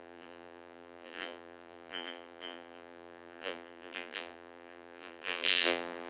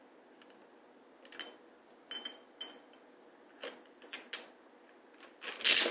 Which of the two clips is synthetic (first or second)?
first